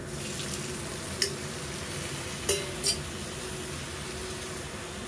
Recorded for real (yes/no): yes